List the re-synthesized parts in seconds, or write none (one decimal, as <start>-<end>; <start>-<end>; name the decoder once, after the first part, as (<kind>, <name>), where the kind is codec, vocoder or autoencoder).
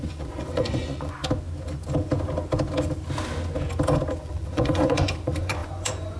0.0-1.2 (vocoder, Vocos); 4.2-6.2